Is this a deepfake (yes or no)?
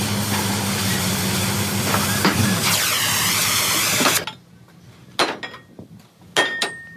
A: no